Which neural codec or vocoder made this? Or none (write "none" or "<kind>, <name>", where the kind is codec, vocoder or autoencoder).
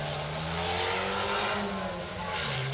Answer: none